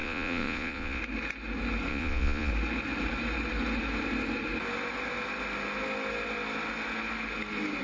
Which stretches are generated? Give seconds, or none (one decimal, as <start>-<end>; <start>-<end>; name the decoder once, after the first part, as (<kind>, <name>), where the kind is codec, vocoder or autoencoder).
0.0-1.0 (vocoder, Vocos); 1.9-2.5